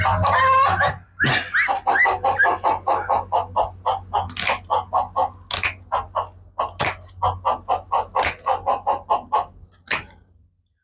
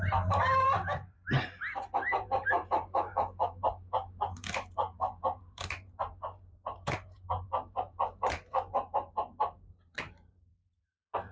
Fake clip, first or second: second